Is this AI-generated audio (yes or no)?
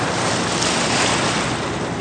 no